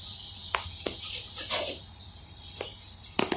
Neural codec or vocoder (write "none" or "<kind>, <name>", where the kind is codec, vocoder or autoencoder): none